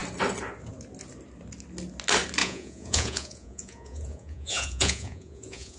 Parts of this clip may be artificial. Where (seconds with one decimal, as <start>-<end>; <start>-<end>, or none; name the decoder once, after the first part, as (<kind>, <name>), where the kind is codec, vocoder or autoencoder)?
2.4-5.8 (vocoder, Vocos)